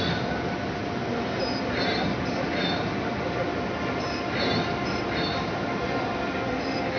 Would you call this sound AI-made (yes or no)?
no